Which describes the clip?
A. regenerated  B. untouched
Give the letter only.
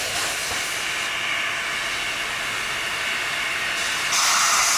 B